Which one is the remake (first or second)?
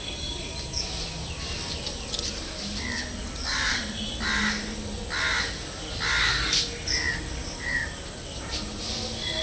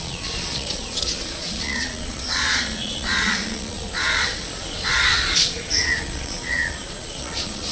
second